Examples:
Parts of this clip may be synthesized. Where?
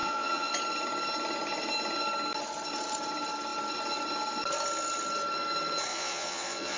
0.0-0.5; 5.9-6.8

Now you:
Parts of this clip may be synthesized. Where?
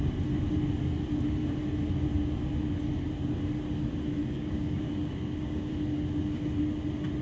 4.2-5.7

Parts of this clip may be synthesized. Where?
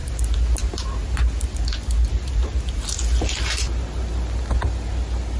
none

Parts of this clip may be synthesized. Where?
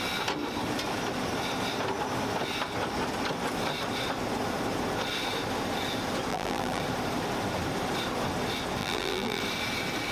6.3-6.8; 8.8-9.4